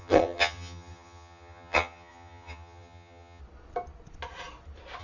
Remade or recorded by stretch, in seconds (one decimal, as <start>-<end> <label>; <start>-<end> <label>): 0.0-3.4 remade; 3.4-5.0 recorded